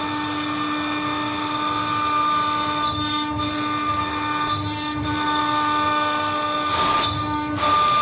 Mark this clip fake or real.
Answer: real